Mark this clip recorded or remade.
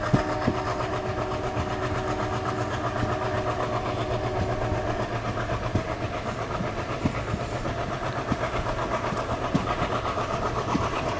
recorded